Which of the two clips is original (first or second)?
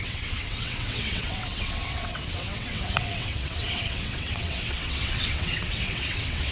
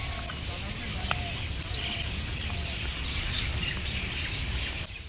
second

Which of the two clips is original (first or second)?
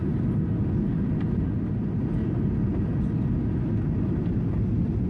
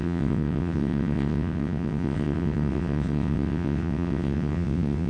first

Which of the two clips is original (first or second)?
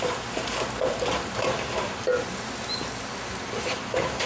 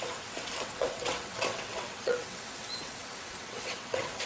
first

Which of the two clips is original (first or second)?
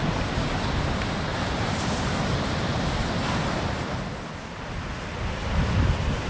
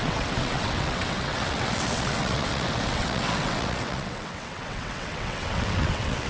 first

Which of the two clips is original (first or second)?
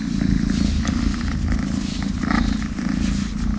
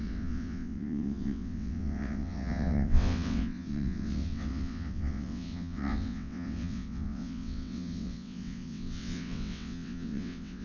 first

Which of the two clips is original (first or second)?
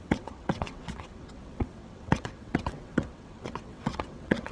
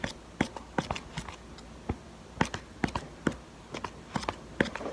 second